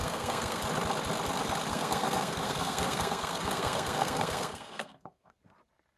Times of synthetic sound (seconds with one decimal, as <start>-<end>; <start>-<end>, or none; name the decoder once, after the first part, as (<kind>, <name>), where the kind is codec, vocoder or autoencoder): 0.0-0.6 (codec, SNAC); 1.7-5.3